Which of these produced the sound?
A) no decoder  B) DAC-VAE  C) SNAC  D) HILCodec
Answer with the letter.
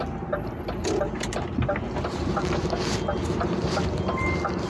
A